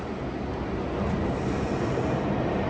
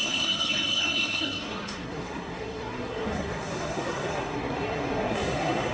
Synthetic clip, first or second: second